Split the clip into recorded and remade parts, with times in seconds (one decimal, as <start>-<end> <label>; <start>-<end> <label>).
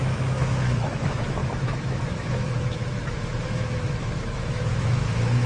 0.0-5.5 remade